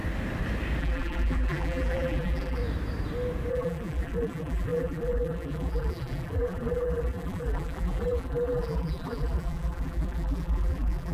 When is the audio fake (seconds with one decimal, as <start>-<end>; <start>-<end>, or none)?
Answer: 0.8-2.6; 3.5-11.1